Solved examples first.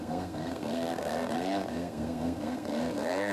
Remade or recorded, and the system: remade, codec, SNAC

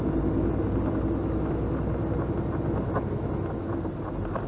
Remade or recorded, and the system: recorded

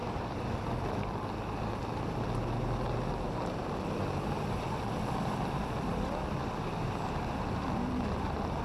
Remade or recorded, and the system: recorded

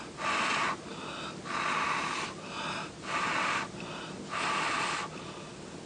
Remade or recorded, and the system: recorded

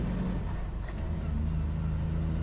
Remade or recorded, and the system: recorded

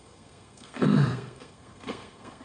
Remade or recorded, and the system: remade, codec, SNAC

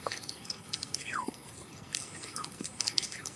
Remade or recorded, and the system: remade, codec, SNAC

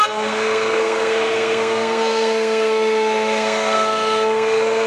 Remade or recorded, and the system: remade, codec, SNAC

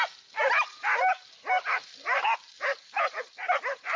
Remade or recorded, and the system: recorded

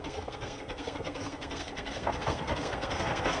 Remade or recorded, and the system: remade, codec, SNAC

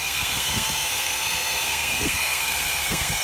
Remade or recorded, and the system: remade, codec, SNAC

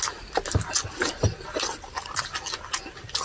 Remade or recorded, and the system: recorded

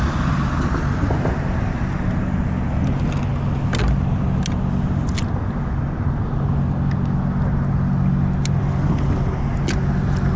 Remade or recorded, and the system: recorded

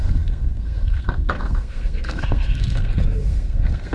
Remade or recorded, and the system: remade, codec, SNAC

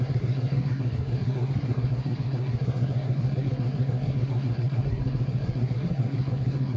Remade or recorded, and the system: remade, codec, SNAC